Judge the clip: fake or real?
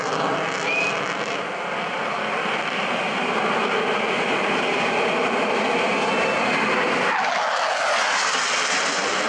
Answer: real